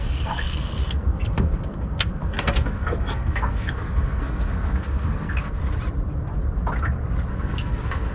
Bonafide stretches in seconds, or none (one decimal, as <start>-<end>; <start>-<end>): 5.6-7.3